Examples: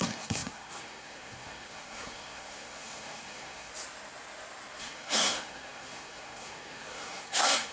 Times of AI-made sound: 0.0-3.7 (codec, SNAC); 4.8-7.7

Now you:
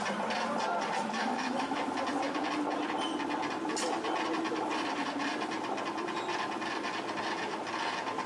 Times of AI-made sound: 1.2-1.8 (autoencoder, DAC-VAE)

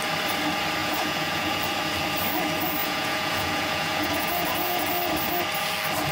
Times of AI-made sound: 0.8-1.6 (vocoder, Vocos); 2.8-4.9

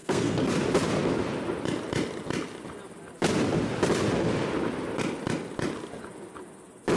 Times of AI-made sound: 0.0-0.5 (codec, SNAC)

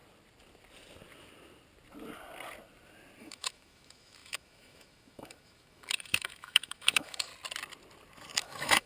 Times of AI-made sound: 3.2-7.3 (autoencoder, DAC-VAE); 8.4-8.9